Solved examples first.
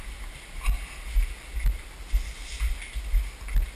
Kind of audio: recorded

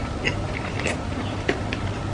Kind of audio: recorded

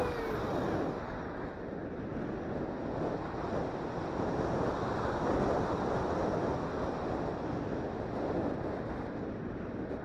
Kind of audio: recorded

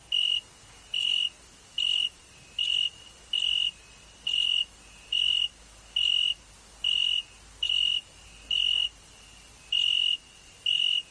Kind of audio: recorded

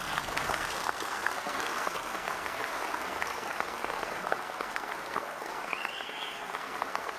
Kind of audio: remade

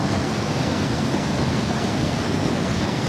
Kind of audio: remade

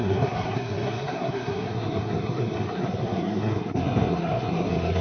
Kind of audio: remade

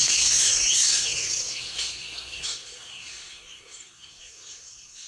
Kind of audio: remade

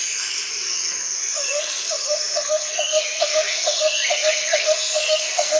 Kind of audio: remade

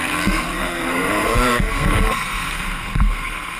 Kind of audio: remade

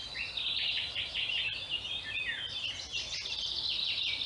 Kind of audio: recorded